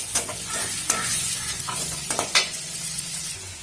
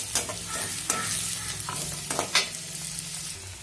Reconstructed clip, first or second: first